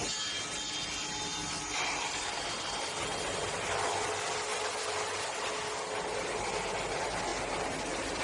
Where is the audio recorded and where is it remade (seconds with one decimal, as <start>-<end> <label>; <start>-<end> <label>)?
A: 0.0-8.2 recorded